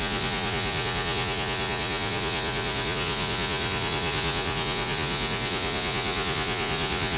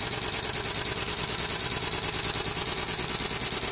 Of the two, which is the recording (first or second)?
second